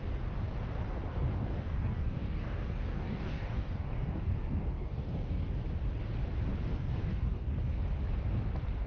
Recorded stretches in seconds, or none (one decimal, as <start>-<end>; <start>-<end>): 0.0-1.1; 5.5-6.7; 7.6-8.9